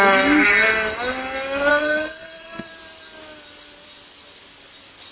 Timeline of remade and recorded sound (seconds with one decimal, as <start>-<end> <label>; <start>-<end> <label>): 0.0-1.7 recorded; 1.7-2.7 remade; 2.7-5.1 recorded